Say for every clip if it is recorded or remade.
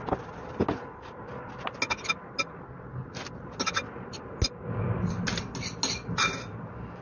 recorded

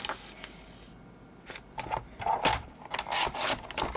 recorded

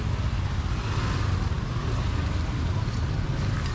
recorded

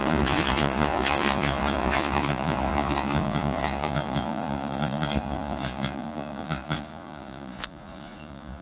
remade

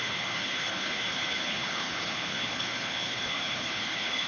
remade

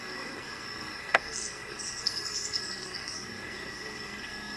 remade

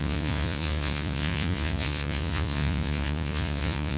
remade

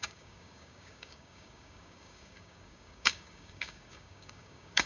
remade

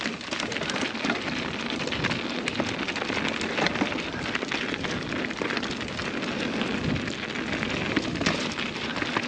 recorded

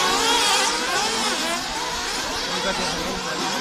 recorded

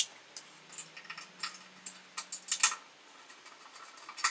recorded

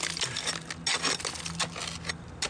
recorded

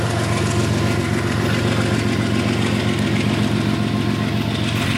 recorded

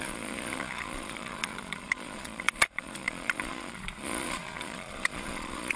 remade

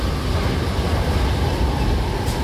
recorded